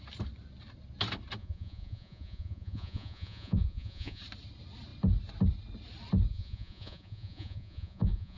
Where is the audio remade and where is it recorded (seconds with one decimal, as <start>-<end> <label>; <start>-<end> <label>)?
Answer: 0.0-1.4 recorded; 1.4-4.2 remade; 4.2-6.3 recorded; 6.3-8.4 remade